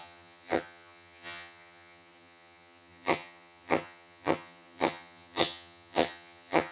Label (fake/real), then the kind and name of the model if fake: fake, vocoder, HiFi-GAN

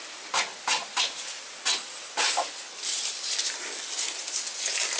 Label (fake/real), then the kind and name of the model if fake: real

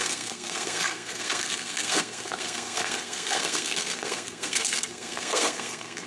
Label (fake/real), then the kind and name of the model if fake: fake, codec, SNAC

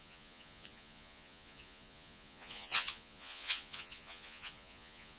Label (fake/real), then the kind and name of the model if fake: fake, vocoder, Vocos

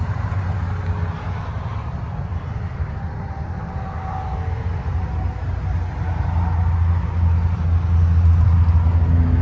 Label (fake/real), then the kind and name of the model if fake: real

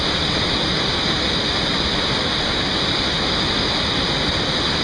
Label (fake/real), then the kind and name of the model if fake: real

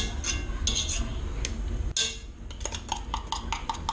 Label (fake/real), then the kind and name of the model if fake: real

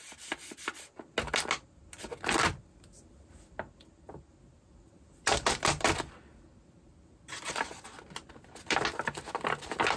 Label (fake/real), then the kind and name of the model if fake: real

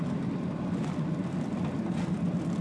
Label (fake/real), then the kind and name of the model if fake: real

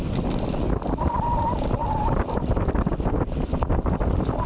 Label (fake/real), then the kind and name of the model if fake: real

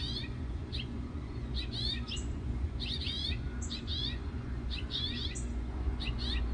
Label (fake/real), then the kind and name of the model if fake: fake, vocoder, Vocos